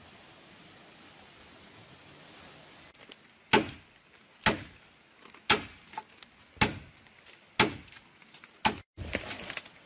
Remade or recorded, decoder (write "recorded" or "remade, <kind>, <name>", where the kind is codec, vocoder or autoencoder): recorded